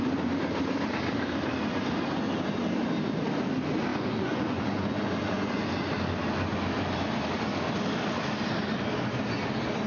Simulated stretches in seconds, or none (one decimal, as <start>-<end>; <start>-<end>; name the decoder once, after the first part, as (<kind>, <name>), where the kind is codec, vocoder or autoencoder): 3.9-5.6 (vocoder, Vocos)